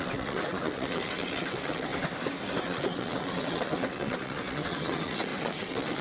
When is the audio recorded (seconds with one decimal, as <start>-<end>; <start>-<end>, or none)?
1.9-2.6